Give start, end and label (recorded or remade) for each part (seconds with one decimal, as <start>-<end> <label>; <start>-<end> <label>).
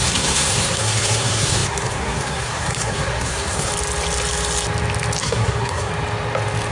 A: 0.0-3.7 remade; 3.7-5.2 recorded; 5.2-5.9 remade; 5.9-6.7 recorded